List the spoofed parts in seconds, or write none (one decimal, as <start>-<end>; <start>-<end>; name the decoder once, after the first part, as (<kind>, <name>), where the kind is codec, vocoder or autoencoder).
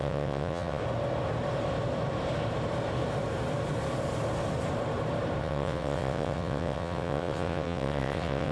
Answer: 0.0-0.8 (vocoder, WaveNeXt); 5.4-8.5